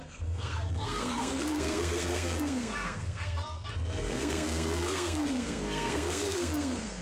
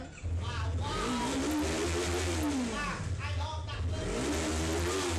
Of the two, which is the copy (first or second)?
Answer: first